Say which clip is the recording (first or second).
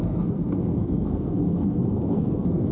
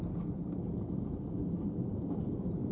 second